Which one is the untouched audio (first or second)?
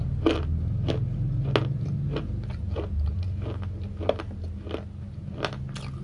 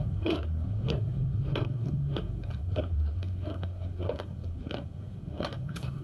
first